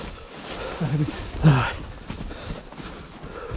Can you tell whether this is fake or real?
real